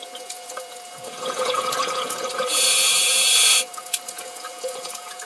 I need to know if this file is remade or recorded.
remade